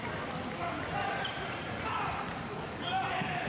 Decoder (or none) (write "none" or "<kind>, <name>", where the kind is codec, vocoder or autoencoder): none